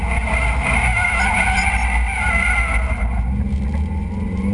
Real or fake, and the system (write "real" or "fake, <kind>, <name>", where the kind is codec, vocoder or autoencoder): real